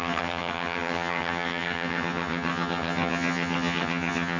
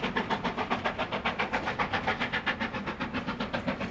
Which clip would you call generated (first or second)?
first